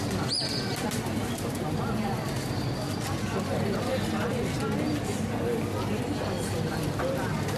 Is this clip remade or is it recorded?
recorded